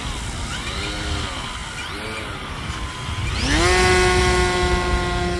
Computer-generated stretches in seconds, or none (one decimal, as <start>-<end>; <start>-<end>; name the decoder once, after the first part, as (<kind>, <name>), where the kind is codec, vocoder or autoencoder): none